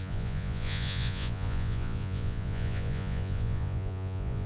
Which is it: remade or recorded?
remade